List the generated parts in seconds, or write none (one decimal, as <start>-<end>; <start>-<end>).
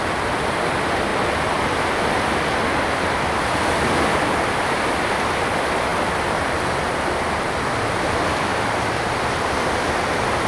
8.5-9.2